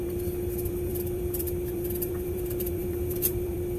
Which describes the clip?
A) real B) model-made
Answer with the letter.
B